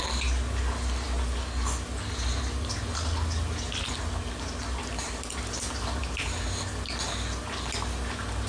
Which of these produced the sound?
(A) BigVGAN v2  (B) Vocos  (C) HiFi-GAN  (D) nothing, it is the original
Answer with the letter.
D